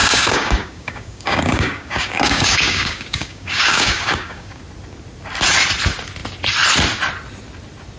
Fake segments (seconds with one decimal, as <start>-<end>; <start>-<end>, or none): 0.0-4.6

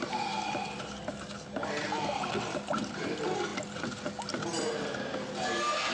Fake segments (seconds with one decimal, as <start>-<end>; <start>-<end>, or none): none